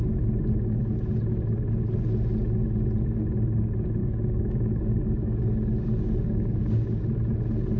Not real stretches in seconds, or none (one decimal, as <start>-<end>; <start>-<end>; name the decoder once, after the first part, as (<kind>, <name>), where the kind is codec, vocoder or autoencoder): 4.0-7.0 (codec, DAC)